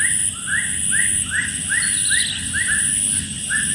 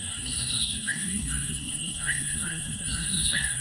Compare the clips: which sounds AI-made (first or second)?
second